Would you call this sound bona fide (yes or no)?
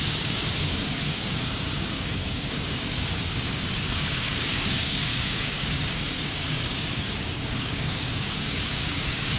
no